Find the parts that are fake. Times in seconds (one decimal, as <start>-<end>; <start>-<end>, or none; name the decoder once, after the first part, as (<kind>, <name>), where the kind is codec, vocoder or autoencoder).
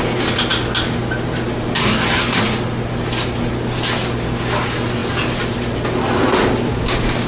6.7-7.3 (codec, DAC)